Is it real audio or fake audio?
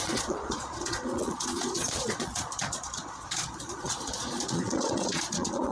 fake